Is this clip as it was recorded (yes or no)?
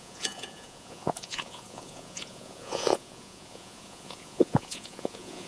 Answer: no